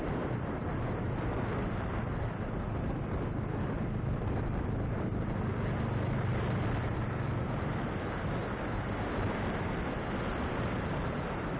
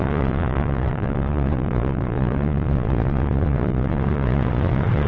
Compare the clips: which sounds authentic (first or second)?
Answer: first